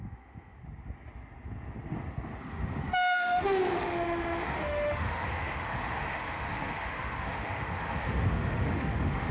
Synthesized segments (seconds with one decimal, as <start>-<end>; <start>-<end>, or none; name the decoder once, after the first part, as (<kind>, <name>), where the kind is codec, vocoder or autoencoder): 0.0-0.6 (autoencoder, DAC-VAE); 2.4-9.3